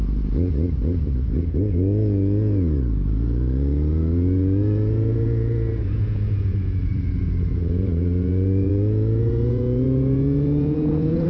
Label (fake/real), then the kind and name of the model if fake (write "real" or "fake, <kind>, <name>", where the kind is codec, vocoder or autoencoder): fake, vocoder, Vocos